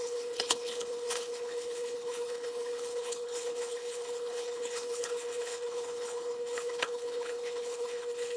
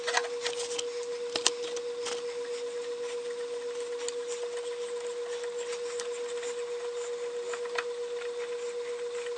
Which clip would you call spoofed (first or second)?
first